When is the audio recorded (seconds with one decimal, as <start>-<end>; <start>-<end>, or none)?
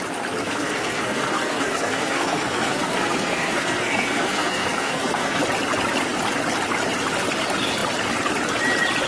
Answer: 0.0-0.4; 5.4-9.1